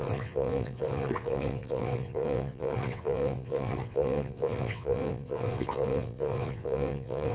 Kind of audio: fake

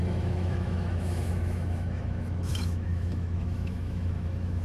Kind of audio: fake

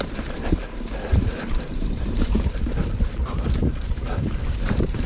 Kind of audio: fake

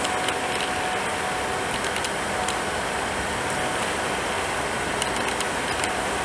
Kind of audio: real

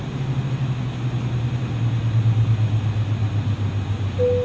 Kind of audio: real